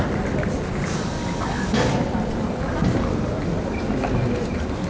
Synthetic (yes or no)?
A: no